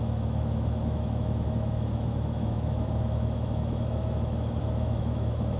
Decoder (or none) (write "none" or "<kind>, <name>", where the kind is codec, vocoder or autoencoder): autoencoder, DAC-VAE